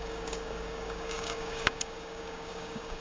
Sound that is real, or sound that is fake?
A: fake